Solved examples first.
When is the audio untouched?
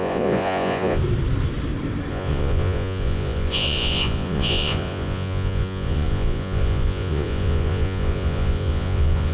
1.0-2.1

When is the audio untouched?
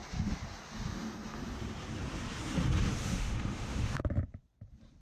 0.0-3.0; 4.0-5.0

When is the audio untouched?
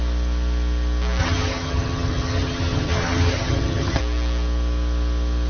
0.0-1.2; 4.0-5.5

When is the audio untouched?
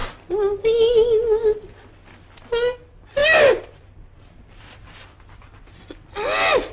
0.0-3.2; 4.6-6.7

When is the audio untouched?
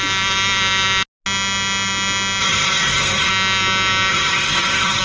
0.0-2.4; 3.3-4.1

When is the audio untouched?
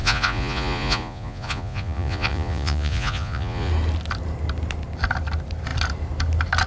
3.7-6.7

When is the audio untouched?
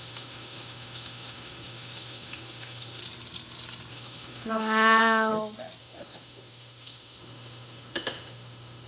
3.0-3.9; 5.3-5.8